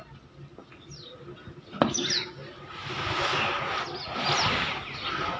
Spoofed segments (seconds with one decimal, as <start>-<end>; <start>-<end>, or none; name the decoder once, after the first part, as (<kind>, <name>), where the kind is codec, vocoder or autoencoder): none